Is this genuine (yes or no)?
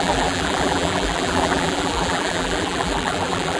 no